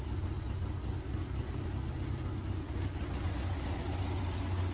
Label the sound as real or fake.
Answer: real